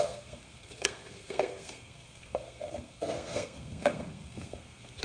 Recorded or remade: remade